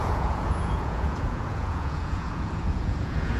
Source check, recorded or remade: remade